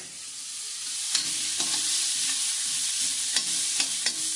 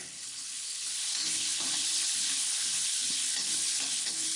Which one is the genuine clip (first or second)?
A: first